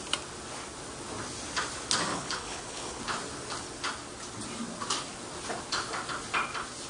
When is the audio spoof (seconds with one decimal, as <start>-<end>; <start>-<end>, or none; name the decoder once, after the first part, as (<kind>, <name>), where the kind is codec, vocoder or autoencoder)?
2.1-3.0 (codec, HILCodec)